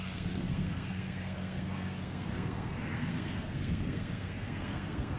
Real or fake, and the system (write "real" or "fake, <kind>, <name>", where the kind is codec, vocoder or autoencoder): fake, codec, SNAC